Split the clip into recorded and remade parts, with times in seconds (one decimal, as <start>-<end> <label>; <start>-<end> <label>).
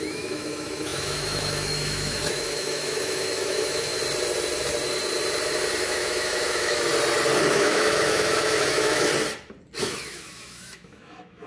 0.0-3.9 remade; 3.9-5.7 recorded; 5.7-6.9 remade; 6.9-7.5 recorded; 7.5-9.1 remade; 9.1-9.8 recorded; 9.8-11.5 remade